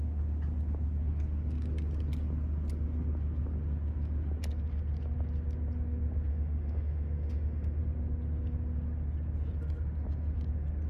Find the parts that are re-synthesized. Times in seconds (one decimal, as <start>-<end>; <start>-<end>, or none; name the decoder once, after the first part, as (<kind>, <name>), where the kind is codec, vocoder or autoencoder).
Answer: 6.3-7.8 (autoencoder, DAC-VAE)